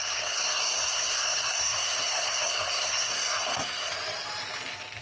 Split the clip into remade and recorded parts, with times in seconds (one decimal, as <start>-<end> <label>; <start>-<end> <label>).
0.0-3.9 remade; 3.9-5.0 recorded